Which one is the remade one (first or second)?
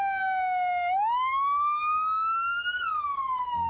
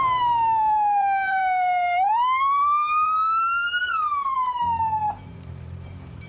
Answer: second